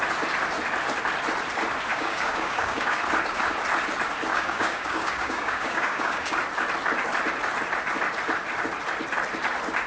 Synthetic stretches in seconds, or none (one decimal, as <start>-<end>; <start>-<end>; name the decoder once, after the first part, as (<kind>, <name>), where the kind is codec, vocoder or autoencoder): 1.9-3.0 (codec, DAC); 4.3-6.4